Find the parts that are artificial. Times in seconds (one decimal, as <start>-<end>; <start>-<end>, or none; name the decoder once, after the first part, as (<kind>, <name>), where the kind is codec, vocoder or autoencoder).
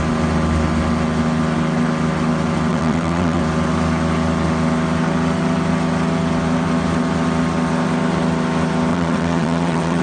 2.7-3.4 (vocoder, WaveNeXt); 8.9-10.0